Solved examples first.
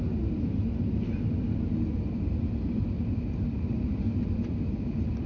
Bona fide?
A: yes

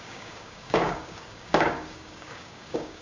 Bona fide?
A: no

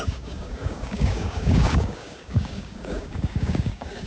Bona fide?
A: no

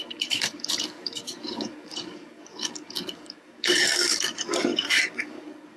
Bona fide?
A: no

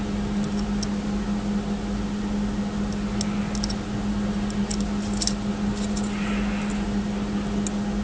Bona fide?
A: yes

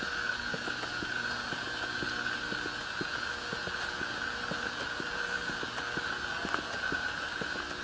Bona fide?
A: yes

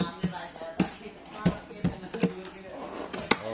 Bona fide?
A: yes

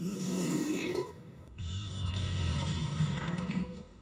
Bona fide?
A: no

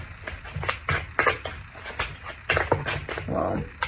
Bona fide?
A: yes